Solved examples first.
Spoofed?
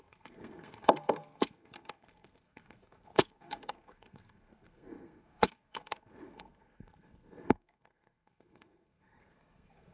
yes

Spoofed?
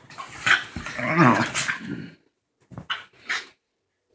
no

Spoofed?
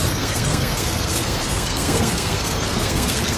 yes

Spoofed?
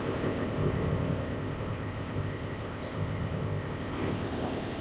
yes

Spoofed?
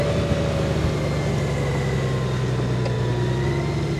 no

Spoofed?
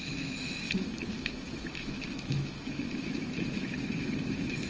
yes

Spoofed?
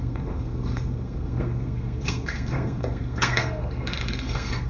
yes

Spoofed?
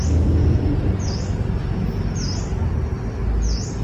no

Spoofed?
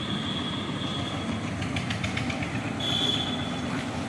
no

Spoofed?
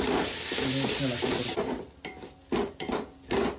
no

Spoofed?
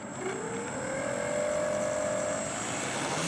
no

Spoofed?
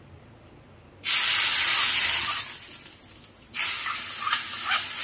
no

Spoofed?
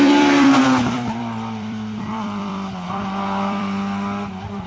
yes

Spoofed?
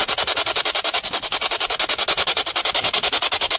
no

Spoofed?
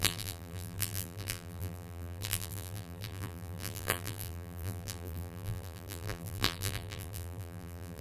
yes